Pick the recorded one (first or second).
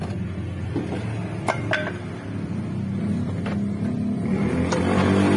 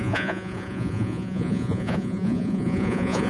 first